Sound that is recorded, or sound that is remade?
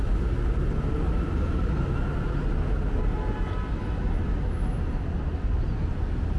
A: recorded